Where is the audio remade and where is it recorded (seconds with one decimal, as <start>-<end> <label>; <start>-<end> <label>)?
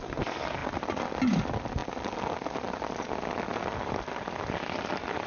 0.0-5.3 remade